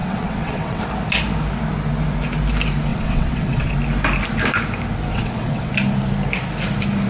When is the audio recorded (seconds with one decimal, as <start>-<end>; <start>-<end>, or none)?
0.8-2.9; 3.7-5.1; 5.7-7.1